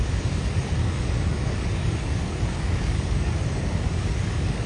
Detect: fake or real fake